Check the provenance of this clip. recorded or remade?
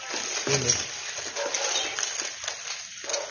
recorded